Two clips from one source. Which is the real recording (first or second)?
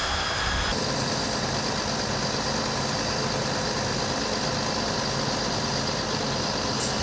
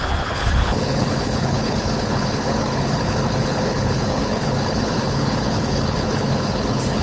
first